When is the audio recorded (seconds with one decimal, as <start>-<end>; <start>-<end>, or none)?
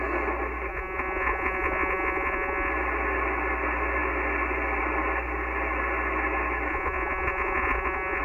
0.0-0.7; 2.7-6.7